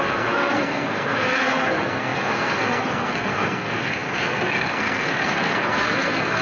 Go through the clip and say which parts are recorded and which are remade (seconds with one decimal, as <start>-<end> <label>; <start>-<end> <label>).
0.0-6.4 remade